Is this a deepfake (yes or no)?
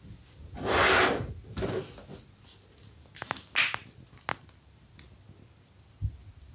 no